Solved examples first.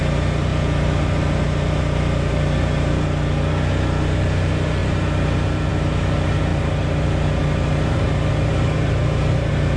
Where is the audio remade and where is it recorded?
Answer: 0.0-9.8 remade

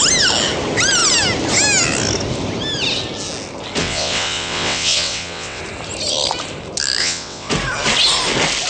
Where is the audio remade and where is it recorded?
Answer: 0.0-3.8 recorded; 3.8-5.6 remade; 5.6-7.0 recorded; 7.0-7.5 remade; 7.5-8.7 recorded

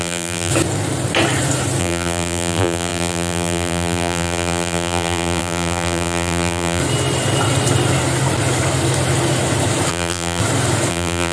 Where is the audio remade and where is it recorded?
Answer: 0.0-0.5 remade; 0.5-1.8 recorded; 1.8-6.8 remade; 6.8-9.9 recorded; 9.9-10.4 remade; 10.4-10.9 recorded; 10.9-11.3 remade

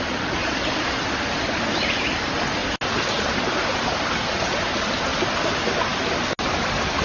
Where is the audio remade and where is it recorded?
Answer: 0.0-7.0 recorded